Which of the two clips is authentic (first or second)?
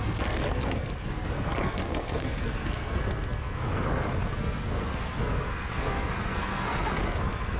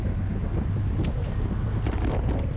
second